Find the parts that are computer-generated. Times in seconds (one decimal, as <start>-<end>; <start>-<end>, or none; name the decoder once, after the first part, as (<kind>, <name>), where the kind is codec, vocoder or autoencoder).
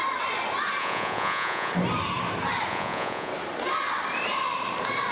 0.8-1.7 (vocoder, Vocos); 2.7-3.3